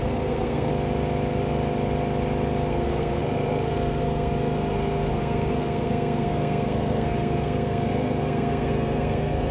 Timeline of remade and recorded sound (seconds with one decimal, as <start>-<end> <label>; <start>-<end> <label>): 0.0-0.7 remade; 0.7-2.7 recorded; 2.7-9.5 remade